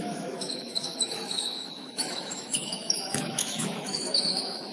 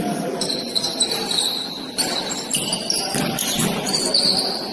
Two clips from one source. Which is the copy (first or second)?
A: first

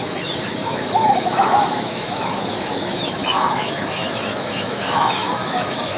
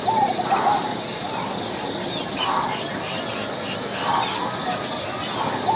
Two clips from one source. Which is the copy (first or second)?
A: first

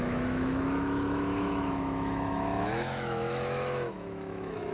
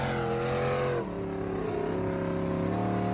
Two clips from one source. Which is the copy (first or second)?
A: first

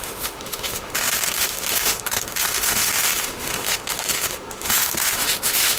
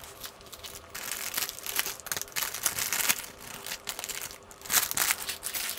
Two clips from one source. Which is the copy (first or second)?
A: first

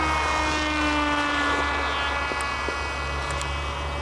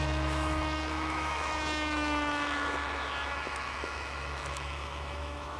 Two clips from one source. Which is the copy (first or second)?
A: second